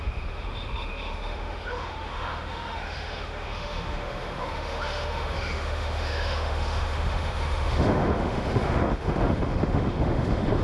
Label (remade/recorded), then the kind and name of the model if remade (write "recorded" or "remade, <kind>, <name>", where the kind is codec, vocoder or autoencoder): remade, autoencoder, DAC-VAE